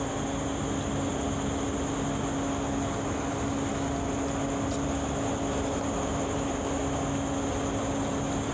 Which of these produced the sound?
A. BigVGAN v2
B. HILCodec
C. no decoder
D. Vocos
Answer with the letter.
C